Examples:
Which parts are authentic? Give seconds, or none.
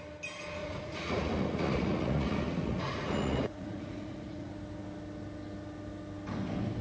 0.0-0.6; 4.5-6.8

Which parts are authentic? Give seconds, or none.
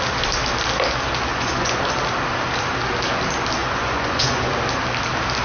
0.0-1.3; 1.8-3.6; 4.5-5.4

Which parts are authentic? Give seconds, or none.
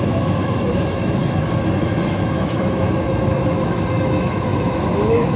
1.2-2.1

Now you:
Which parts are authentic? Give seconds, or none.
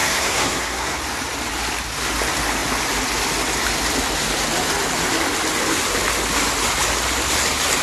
1.0-7.8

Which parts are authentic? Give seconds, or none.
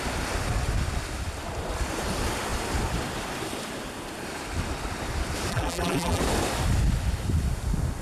0.0-5.5; 6.2-8.0